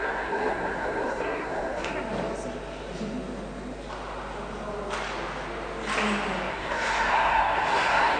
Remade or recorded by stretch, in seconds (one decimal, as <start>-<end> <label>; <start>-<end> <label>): 0.0-1.9 remade; 1.9-6.5 recorded; 6.5-8.2 remade